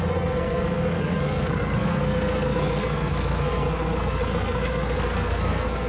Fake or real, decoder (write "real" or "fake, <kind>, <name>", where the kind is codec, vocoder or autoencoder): fake, codec, SNAC